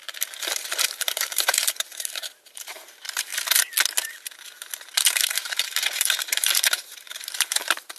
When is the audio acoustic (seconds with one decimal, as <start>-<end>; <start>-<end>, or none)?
3.3-4.1